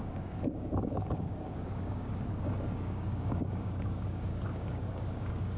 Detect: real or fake fake